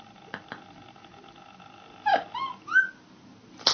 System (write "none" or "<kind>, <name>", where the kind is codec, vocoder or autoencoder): none